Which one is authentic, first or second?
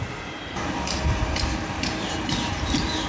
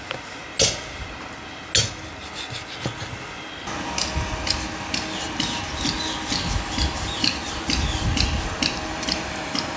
second